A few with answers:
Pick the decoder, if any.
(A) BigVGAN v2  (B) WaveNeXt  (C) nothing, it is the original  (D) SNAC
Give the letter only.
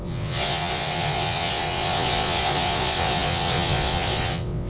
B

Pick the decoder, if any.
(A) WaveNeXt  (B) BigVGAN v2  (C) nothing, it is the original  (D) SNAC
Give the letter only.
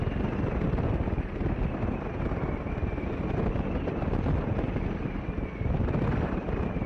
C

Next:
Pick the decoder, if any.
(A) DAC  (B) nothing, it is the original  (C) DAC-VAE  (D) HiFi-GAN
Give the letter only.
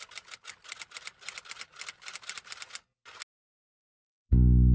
B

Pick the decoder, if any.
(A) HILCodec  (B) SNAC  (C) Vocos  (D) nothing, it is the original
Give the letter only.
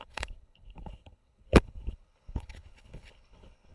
A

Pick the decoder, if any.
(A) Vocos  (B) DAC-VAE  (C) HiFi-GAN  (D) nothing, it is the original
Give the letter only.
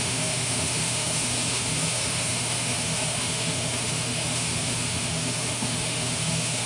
B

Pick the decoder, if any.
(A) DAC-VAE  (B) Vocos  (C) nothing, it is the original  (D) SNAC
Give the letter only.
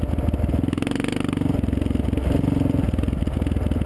C